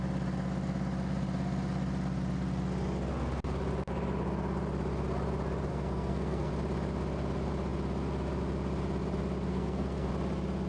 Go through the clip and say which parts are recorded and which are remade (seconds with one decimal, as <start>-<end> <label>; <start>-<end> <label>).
0.0-5.7 recorded; 5.7-6.5 remade; 6.5-9.5 recorded; 9.5-10.1 remade; 10.1-10.7 recorded